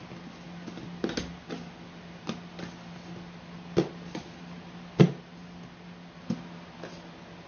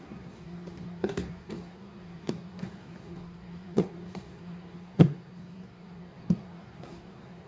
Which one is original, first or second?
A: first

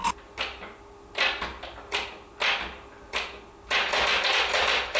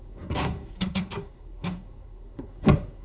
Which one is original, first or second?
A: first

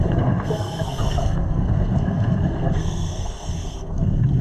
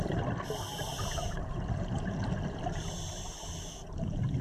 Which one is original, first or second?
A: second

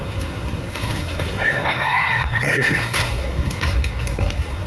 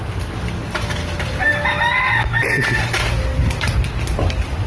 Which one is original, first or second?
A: second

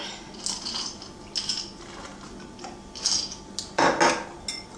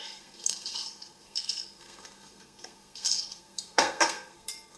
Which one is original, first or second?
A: first